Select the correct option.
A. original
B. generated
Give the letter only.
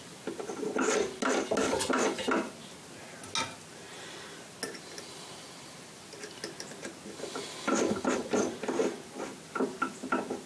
A